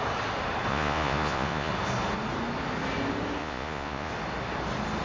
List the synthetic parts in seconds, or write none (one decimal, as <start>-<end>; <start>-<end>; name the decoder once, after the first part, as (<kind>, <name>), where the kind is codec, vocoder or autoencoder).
0.7-1.7 (vocoder, Vocos); 3.4-4.1